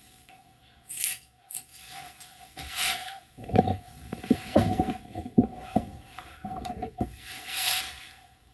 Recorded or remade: remade